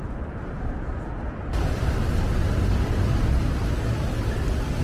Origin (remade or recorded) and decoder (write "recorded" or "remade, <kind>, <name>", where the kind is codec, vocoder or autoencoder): recorded